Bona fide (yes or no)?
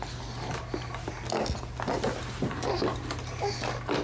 yes